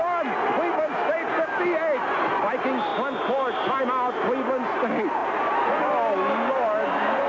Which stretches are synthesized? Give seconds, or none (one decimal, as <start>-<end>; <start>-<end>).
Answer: none